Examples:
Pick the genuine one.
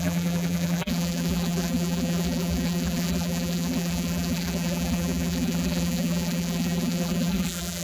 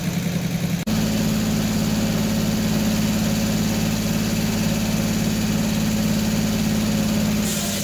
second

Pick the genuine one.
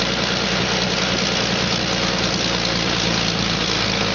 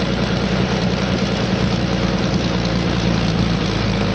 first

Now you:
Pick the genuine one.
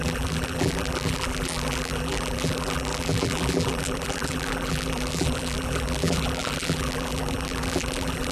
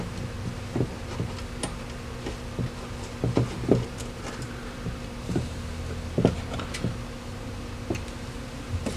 second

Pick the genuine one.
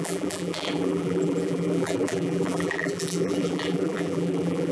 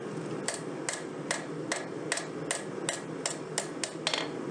second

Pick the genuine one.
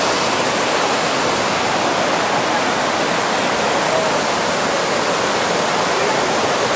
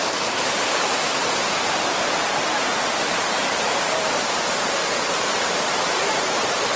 first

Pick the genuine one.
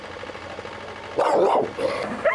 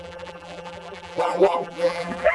first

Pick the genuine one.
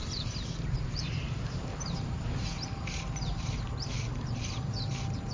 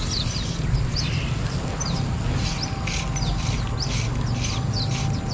second